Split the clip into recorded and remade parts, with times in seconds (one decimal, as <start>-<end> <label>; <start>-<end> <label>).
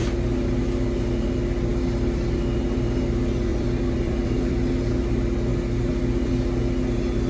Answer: 0.0-3.5 recorded; 3.5-4.7 remade; 4.7-7.3 recorded